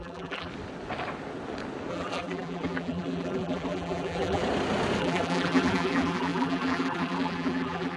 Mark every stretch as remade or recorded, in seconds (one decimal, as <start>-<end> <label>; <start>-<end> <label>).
0.0-0.5 remade; 0.5-1.9 recorded; 1.9-4.4 remade; 4.4-5.0 recorded; 5.0-8.0 remade